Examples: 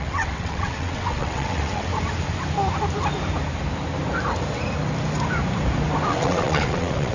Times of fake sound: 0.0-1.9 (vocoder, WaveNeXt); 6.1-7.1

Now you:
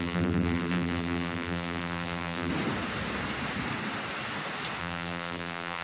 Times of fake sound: 0.0-2.5 (vocoder, BigVGAN v2); 4.8-5.8

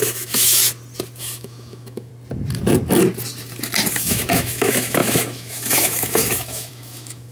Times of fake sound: 0.0-0.6 (autoencoder, DAC-VAE); 1.2-2.1; 3.9-7.3

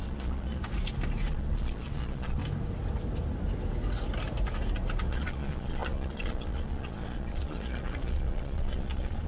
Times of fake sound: 0.0-0.6 (vocoder, Vocos); 1.3-2.4; 5.1-9.3

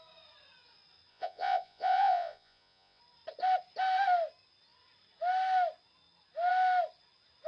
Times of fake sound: 1.1-3.0 (vocoder, Vocos)

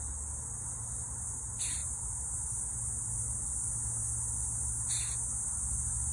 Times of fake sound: none